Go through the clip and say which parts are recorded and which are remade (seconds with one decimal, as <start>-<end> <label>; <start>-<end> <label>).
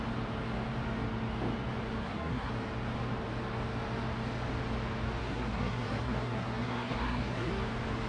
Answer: 0.0-2.0 recorded; 2.0-2.5 remade; 2.5-5.2 recorded; 5.2-7.5 remade; 7.5-8.1 recorded